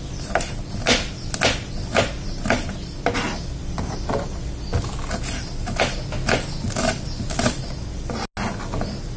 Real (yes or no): yes